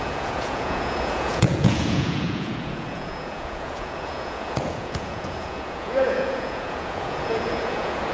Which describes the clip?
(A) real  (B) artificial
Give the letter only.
B